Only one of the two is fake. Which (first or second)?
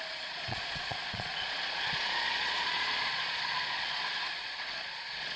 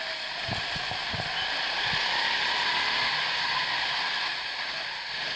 first